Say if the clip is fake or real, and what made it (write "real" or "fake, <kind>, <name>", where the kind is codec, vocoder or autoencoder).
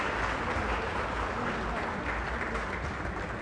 real